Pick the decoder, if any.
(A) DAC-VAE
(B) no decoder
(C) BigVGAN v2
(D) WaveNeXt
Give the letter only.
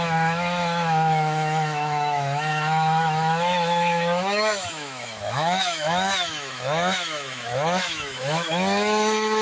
A